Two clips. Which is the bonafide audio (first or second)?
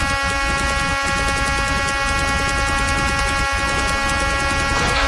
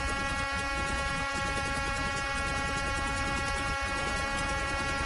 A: first